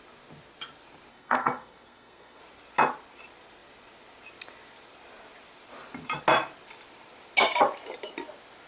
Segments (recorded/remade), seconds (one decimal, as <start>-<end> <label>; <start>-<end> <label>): 0.0-1.1 recorded; 1.1-2.4 remade; 2.4-8.7 recorded